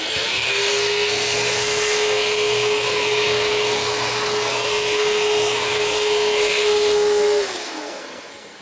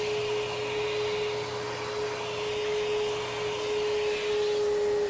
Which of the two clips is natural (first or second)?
second